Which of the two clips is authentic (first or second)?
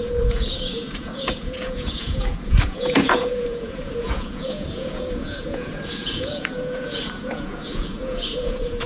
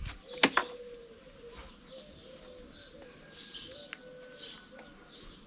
second